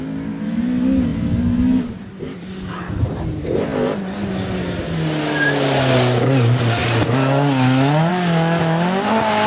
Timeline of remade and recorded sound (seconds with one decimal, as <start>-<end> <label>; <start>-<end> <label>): 0.0-9.5 recorded